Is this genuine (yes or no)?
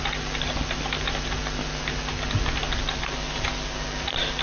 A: yes